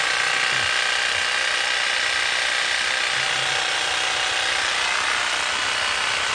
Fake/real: real